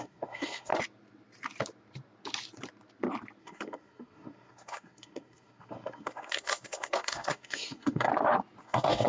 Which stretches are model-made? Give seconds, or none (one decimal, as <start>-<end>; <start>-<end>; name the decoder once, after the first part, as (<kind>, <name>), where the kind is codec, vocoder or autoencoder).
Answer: 0.0-0.7 (codec, SNAC); 3.4-8.1; 8.6-9.1